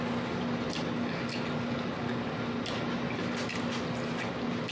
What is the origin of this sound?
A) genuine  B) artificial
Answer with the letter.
A